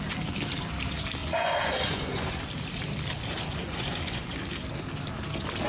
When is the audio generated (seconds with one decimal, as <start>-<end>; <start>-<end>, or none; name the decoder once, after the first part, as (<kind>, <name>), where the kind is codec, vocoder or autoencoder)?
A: 1.2-2.4 (vocoder, Vocos); 3.6-4.4